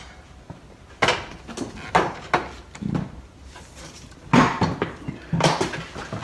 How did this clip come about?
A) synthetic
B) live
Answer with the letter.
B